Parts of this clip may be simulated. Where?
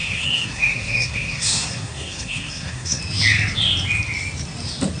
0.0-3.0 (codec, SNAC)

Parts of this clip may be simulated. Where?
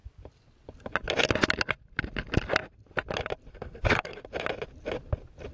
3.5-4.2 (codec, SNAC)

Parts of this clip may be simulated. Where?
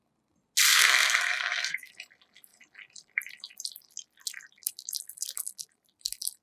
0.7-1.9 (codec, SNAC)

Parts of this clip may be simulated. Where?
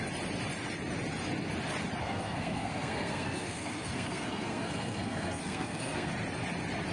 2.0-6.1 (codec, SNAC)